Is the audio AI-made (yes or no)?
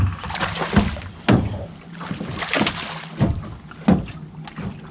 no